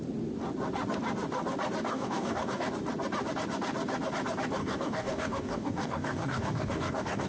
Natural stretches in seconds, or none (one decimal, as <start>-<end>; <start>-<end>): 0.0-1.9; 2.7-4.6